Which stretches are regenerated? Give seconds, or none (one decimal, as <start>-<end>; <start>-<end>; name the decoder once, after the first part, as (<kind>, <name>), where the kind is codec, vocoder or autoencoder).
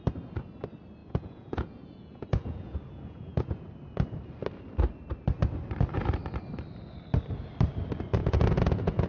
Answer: 1.0-3.6 (vocoder, Vocos); 8.2-9.1